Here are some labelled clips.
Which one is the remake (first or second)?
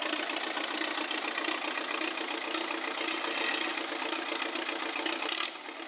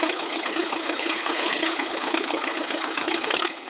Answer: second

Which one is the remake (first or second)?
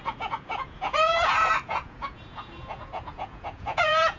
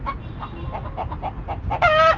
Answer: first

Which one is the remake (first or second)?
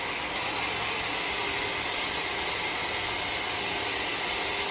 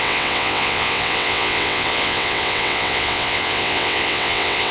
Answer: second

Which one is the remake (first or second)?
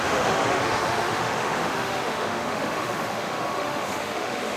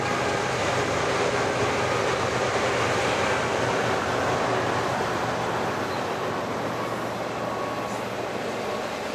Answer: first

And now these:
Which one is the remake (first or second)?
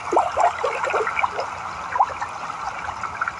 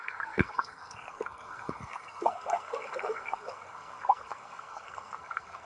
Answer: second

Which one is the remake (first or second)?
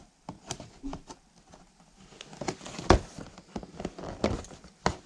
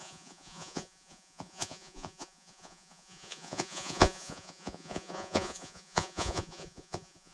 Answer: second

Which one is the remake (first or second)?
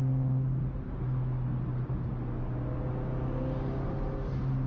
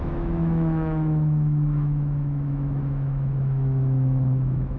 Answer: second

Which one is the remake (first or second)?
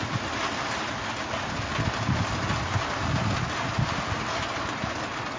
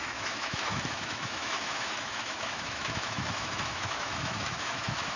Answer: second